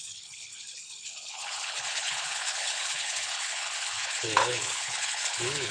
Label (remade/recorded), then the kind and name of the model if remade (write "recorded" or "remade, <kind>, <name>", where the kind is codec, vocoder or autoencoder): remade, codec, HILCodec